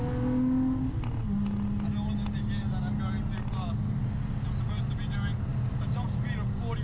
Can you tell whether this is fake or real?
real